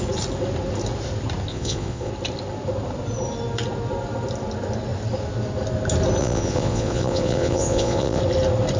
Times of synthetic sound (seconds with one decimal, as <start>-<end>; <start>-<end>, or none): 1.5-2.1; 6.2-8.2